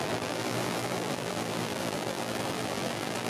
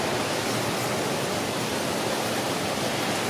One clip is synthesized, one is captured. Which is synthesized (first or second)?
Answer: first